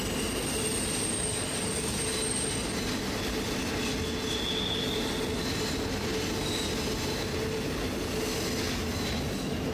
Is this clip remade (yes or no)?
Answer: no